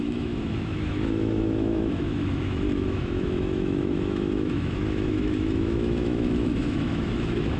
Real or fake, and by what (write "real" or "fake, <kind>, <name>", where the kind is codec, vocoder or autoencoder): fake, autoencoder, DAC-VAE